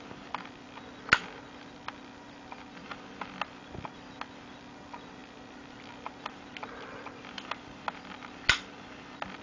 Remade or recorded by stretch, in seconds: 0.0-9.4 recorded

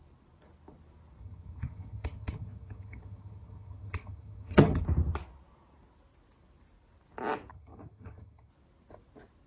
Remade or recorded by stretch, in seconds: 0.0-1.2 recorded; 1.2-4.8 remade; 4.8-7.5 recorded; 7.5-8.5 remade; 8.5-9.5 recorded

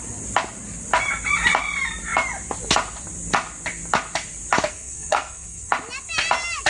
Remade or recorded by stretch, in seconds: 0.0-4.7 recorded; 4.7-5.7 remade; 5.7-6.7 recorded

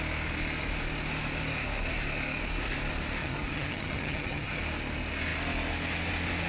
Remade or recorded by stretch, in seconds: 0.0-3.2 recorded; 3.2-4.6 remade; 4.6-6.5 recorded

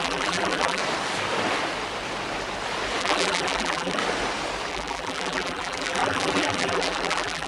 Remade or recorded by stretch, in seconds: 0.0-0.8 remade; 0.8-3.0 recorded; 3.0-4.0 remade; 4.0-4.7 recorded; 4.7-7.5 remade